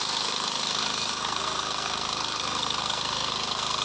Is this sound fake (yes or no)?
yes